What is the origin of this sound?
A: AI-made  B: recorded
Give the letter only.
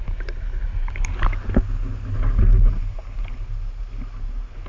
B